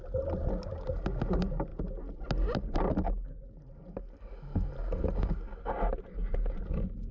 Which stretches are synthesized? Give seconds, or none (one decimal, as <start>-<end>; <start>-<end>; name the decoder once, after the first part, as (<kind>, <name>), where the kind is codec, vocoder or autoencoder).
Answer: none